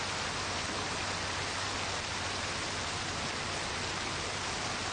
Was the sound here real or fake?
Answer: real